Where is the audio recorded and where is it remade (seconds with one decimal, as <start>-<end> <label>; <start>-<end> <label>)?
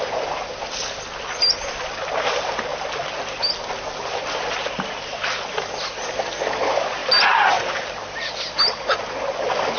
0.0-7.0 recorded; 7.0-8.3 remade; 8.3-9.8 recorded